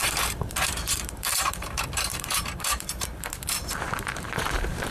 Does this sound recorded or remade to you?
remade